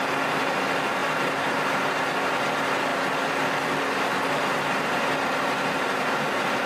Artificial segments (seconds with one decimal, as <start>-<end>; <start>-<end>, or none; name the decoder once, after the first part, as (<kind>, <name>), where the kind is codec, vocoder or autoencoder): none

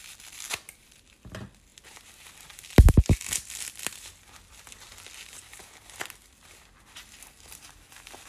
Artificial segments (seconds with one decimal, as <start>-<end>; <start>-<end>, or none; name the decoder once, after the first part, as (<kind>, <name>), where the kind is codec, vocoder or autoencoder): none

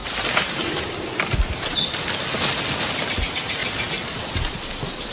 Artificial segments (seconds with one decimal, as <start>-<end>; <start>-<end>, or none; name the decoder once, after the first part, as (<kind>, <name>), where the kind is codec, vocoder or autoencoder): 0.0-2.1 (vocoder, BigVGAN v2)

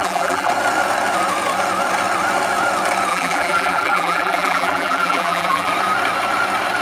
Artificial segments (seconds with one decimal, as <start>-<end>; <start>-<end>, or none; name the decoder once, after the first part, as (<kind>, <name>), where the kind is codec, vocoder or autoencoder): 0.0-0.5 (vocoder, BigVGAN v2); 3.1-5.7

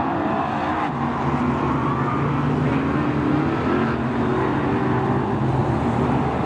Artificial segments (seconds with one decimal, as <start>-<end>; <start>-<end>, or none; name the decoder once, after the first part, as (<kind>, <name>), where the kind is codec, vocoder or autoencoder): none

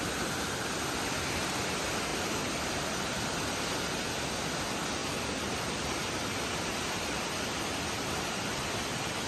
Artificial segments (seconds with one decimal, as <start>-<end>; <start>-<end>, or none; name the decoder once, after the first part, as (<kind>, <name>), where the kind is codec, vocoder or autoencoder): 2.1-3.6 (vocoder, BigVGAN v2); 5.0-5.9